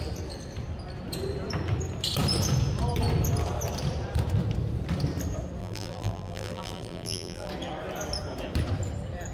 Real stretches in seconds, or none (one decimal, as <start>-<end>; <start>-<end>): 0.0-5.6; 7.5-9.3